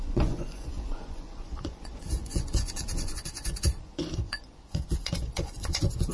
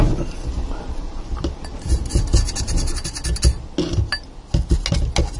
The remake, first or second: first